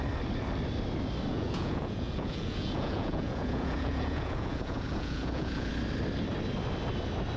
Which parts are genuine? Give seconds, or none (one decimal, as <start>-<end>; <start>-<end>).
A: 0.0-1.3; 5.7-7.4